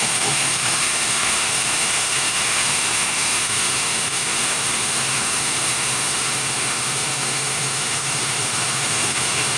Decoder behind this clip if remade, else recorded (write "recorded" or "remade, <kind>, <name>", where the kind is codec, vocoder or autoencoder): remade, autoencoder, DAC-VAE